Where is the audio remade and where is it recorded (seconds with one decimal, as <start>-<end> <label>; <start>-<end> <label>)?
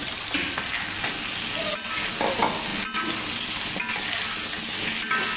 0.0-5.4 recorded